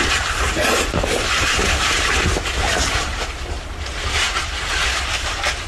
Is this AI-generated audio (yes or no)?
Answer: yes